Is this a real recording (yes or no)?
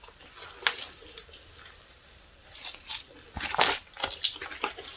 yes